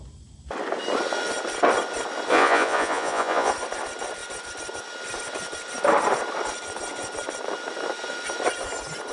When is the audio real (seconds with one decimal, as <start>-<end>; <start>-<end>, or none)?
0.0-2.3; 3.5-9.1